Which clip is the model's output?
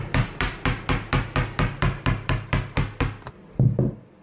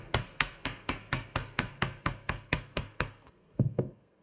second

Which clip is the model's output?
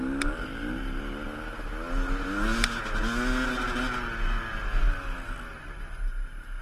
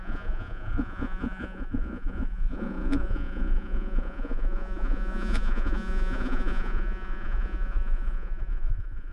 second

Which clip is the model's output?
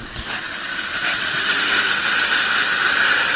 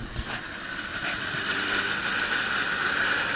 first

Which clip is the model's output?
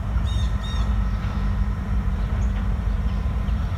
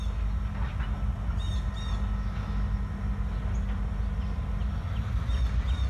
first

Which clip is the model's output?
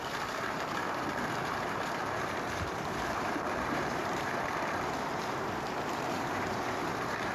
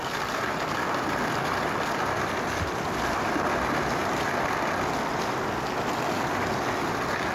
first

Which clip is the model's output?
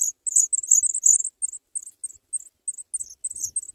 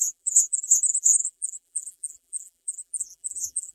second